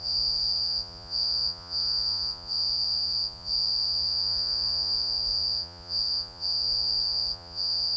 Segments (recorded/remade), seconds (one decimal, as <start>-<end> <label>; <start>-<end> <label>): 0.0-8.0 remade